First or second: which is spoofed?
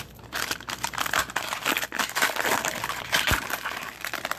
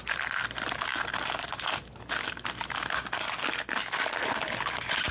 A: first